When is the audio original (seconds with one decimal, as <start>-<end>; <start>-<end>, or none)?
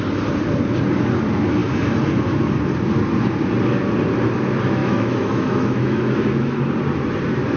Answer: 0.0-4.8; 6.6-7.6